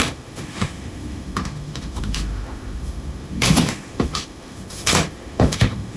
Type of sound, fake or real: fake